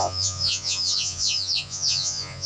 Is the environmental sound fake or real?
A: fake